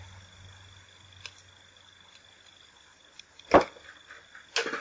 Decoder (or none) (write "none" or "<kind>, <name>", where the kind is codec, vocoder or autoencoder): none